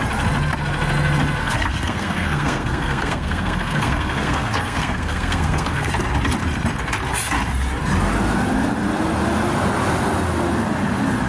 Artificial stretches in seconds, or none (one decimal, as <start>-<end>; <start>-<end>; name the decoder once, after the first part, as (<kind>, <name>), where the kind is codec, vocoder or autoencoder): 1.4-5.9 (codec, SNAC)